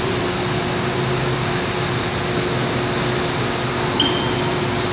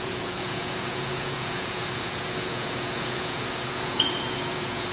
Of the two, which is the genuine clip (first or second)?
first